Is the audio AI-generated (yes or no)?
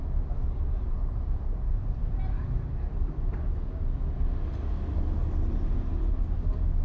no